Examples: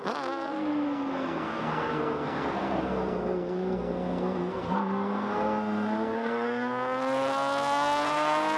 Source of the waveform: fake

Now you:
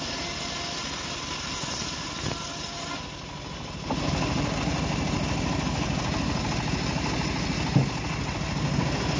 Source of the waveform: real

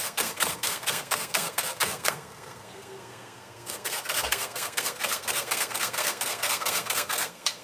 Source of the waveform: fake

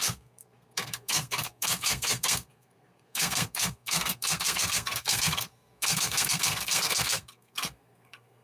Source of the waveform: fake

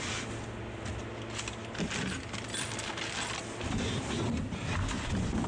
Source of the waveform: real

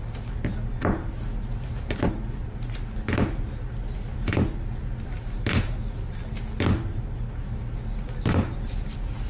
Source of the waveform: real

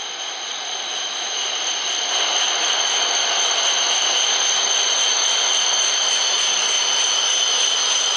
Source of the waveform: real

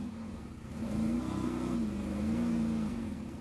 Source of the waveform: fake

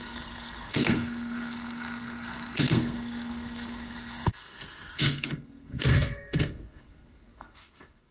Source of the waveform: fake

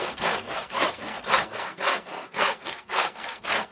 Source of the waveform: fake